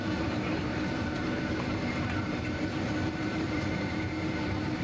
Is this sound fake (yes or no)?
yes